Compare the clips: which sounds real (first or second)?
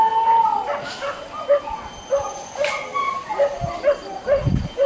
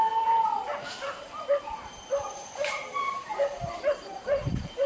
first